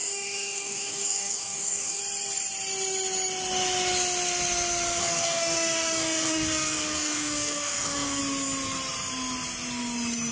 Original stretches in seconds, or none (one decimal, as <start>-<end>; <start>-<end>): 2.0-5.0; 8.2-10.3